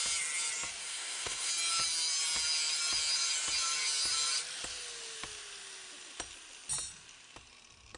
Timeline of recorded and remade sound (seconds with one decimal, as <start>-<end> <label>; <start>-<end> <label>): 0.0-0.8 recorded; 0.8-1.5 remade; 1.5-8.0 recorded

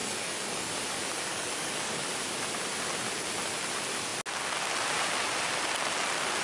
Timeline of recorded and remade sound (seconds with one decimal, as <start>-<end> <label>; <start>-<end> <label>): 0.0-0.7 remade; 0.7-1.3 recorded; 1.3-2.1 remade; 2.1-6.4 recorded